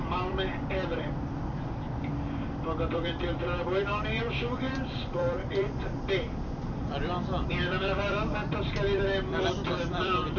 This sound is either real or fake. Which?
fake